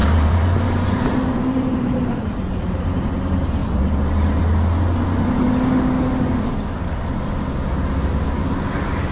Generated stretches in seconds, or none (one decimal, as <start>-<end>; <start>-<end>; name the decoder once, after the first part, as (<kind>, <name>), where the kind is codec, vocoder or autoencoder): 0.0-3.0 (vocoder, BigVGAN v2); 3.6-4.4